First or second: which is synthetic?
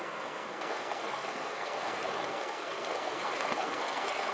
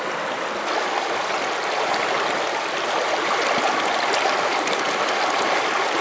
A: first